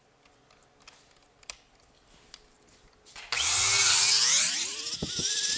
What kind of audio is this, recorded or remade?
recorded